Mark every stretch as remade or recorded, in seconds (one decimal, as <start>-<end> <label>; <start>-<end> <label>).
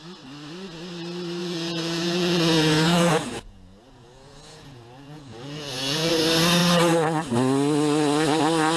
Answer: 0.0-1.4 recorded; 1.4-6.1 remade; 6.1-8.8 recorded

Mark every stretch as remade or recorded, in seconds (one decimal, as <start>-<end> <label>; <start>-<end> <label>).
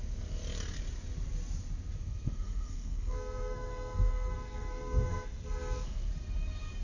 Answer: 0.0-2.0 recorded; 2.0-6.1 remade; 6.1-6.8 recorded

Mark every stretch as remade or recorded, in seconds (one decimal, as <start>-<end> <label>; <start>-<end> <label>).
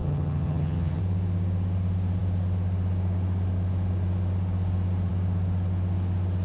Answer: 0.0-1.0 remade; 1.0-6.4 recorded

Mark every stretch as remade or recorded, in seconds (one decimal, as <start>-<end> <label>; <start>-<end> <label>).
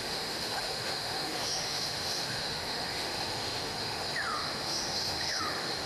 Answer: 0.0-5.9 remade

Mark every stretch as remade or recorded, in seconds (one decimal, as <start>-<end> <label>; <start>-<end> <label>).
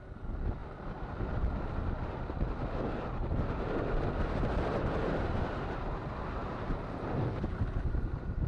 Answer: 0.0-8.5 recorded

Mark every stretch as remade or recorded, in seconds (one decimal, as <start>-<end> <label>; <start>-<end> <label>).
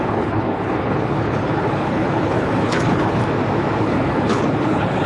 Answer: 0.0-3.2 remade; 3.2-3.8 recorded; 3.8-5.1 remade